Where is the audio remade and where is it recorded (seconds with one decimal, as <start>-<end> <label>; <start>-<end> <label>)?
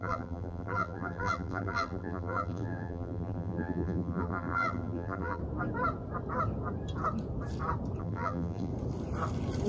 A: 0.0-5.4 remade; 5.4-8.0 recorded; 8.0-8.7 remade; 8.7-9.7 recorded